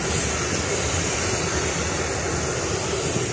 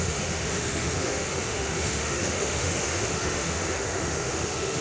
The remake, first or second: second